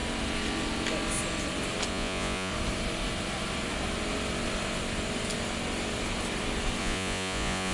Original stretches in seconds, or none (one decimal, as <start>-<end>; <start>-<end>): 0.0-1.9; 2.5-6.8